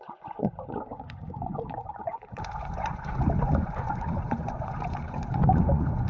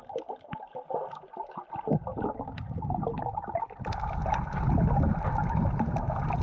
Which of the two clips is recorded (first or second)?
second